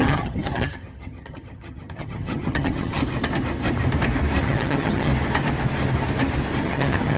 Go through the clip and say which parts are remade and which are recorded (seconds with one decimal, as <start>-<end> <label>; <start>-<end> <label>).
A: 0.0-3.0 remade; 3.0-4.4 recorded; 4.4-5.1 remade; 5.1-6.6 recorded; 6.6-7.2 remade